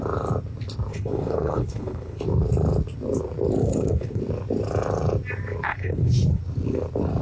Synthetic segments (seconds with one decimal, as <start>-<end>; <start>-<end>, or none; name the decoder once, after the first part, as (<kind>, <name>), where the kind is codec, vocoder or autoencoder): 0.9-2.2 (codec, HILCodec); 3.6-4.2; 5.7-6.4